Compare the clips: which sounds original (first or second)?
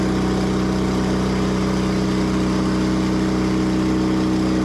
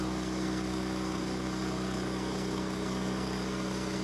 first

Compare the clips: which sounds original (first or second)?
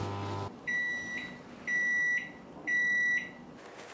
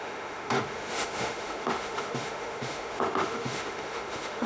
first